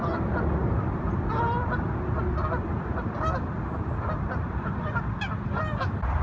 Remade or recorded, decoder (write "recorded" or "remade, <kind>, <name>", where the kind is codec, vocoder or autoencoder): remade, vocoder, BigVGAN v2